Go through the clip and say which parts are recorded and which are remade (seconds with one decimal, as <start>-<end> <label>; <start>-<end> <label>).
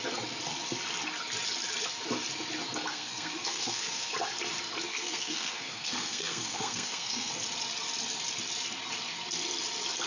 0.0-2.9 recorded; 2.9-4.1 remade; 4.1-4.9 recorded; 4.9-7.3 remade; 7.3-10.1 recorded